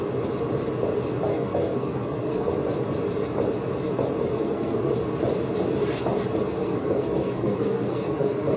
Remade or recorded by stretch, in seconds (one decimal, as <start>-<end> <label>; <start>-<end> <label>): 0.0-1.3 recorded; 1.3-2.5 remade; 2.5-4.2 recorded; 4.2-4.9 remade; 4.9-6.6 recorded; 6.6-8.6 remade